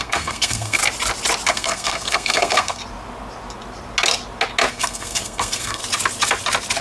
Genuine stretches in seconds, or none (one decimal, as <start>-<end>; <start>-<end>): 0.8-1.5; 2.8-4.7; 5.8-6.8